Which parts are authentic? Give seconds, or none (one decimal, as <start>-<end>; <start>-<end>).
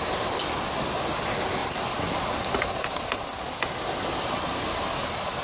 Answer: 0.0-5.4